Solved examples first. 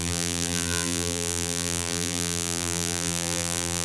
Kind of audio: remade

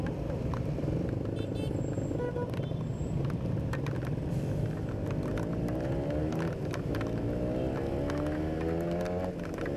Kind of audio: recorded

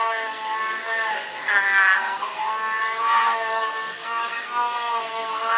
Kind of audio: remade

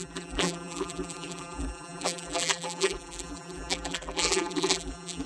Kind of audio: remade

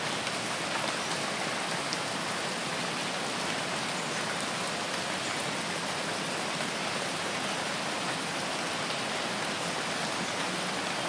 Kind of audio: recorded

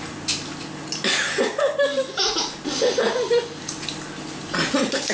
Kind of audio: recorded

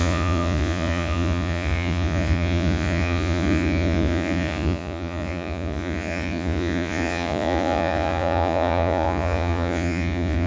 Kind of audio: remade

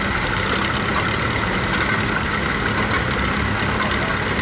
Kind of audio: recorded